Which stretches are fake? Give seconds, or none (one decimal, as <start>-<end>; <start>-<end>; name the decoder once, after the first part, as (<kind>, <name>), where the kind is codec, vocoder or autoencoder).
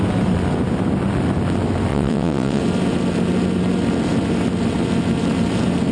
1.9-2.6 (vocoder, WaveNeXt)